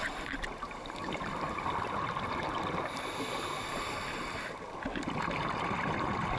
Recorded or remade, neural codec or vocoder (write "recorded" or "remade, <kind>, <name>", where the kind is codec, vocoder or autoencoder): recorded